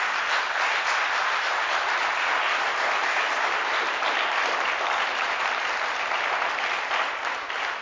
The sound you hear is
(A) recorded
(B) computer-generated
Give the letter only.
A